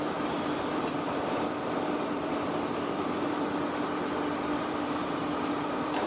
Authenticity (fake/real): fake